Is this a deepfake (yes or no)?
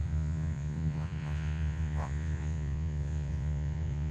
yes